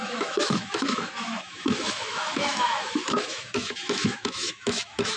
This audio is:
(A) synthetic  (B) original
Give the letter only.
A